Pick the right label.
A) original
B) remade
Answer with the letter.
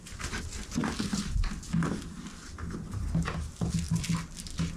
A